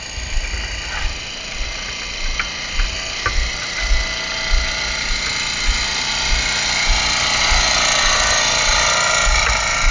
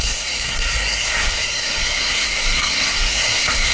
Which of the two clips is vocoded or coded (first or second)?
second